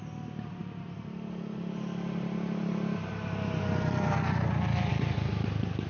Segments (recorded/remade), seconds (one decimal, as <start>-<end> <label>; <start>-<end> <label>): 0.0-5.9 recorded